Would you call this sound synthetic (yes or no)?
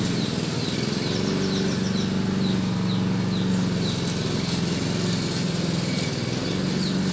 no